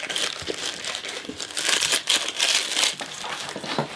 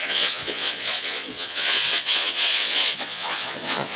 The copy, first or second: second